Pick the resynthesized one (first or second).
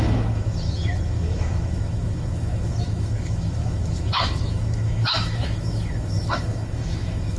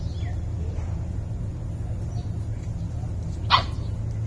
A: first